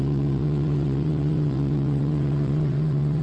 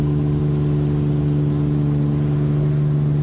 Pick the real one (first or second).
second